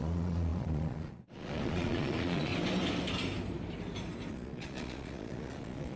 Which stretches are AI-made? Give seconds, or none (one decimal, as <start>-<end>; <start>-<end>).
0.0-2.5; 4.3-6.0